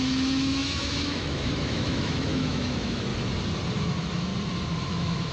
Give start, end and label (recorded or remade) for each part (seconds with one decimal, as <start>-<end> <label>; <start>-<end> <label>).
0.0-3.1 remade; 3.1-3.8 recorded; 3.8-4.3 remade; 4.3-4.8 recorded; 4.8-5.3 remade